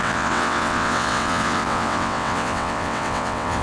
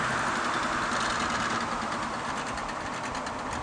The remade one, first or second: first